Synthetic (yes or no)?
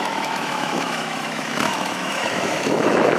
yes